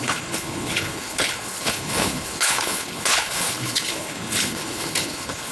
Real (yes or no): no